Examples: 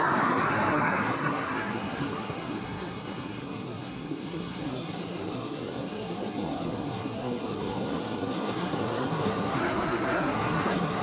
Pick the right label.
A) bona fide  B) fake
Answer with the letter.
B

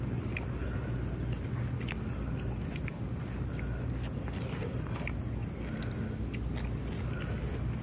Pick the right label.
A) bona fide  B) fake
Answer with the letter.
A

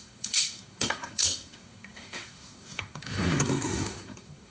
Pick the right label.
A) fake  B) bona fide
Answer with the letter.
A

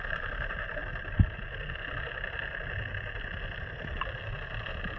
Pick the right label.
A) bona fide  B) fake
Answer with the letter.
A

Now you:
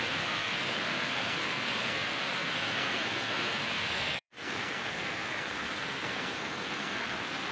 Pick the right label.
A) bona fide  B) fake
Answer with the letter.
B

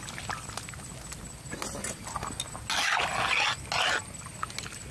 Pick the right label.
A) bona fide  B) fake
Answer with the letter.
A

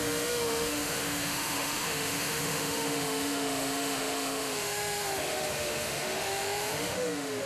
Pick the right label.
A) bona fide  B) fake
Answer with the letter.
B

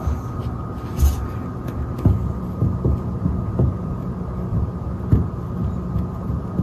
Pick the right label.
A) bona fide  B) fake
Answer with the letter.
A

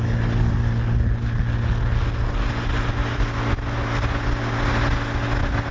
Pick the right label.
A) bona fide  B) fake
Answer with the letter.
A